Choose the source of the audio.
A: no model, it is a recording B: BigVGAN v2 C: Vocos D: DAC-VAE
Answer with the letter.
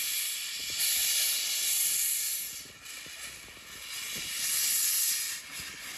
A